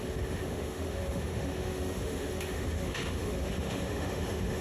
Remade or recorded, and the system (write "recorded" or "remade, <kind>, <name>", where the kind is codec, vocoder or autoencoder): remade, autoencoder, DAC-VAE